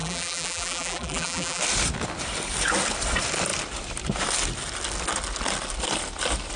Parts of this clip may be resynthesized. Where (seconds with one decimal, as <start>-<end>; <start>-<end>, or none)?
0.0-1.6